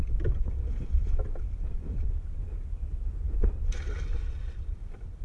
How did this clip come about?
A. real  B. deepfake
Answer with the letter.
A